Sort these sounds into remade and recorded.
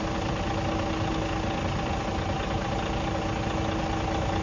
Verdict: recorded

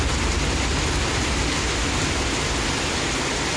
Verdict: recorded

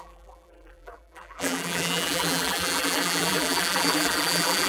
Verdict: remade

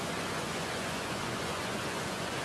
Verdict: remade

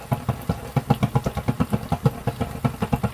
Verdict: recorded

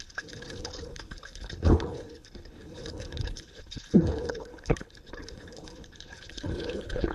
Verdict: remade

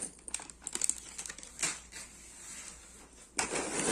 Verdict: recorded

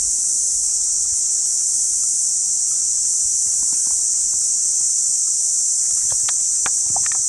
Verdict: recorded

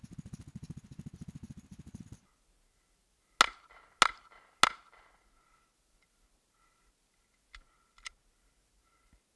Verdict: recorded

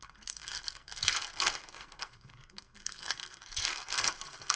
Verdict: remade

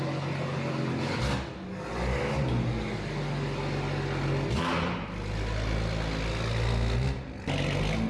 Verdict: recorded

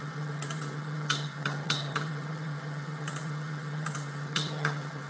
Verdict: remade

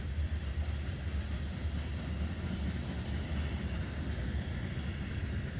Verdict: recorded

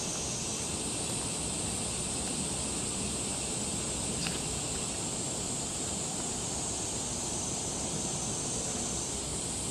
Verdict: remade